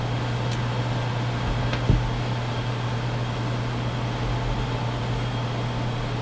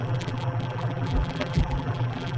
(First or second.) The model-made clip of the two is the second